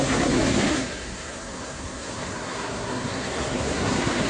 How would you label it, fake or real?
fake